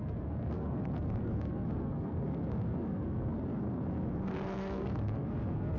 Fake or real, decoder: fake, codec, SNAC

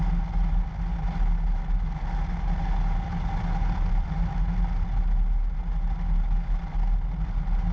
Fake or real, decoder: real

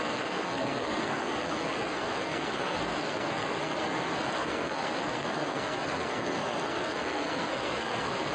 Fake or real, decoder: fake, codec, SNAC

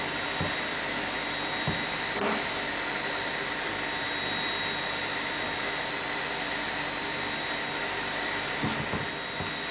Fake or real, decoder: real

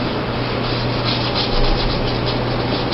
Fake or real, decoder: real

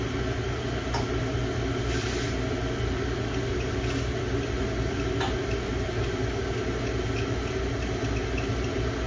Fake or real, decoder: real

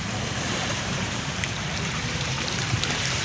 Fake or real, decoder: fake, vocoder, BigVGAN v2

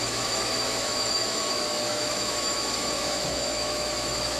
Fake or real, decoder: fake, autoencoder, DAC-VAE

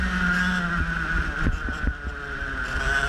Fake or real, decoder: real